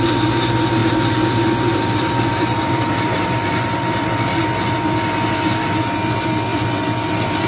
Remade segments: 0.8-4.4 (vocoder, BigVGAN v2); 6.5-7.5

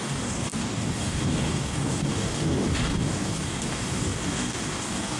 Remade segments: 0.0-5.2 (codec, DAC)

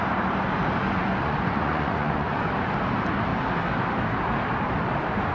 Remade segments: 1.0-2.5 (vocoder, Vocos)

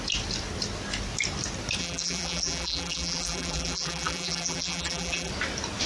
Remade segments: 1.8-5.3 (vocoder, BigVGAN v2)

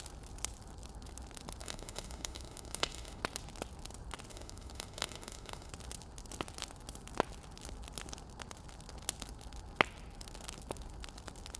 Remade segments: 1.6-3.2 (autoencoder, DAC-VAE); 4.3-5.7

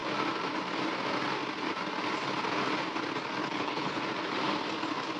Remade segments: 3.4-4.0 (codec, HILCodec)

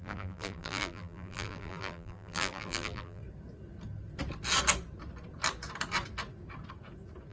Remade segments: 0.0-3.2 (vocoder, BigVGAN v2)

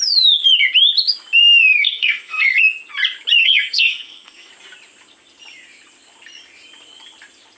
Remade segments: 1.7-2.6 (codec, SNAC); 3.4-4.5